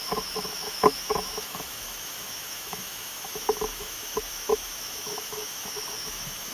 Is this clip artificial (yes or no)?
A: yes